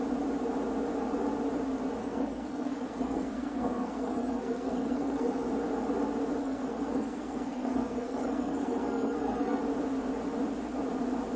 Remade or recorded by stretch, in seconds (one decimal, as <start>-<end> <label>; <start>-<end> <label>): 0.0-2.0 recorded; 2.0-5.5 remade; 5.5-6.4 recorded; 6.4-9.6 remade; 9.6-11.4 recorded